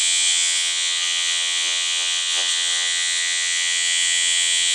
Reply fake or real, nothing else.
fake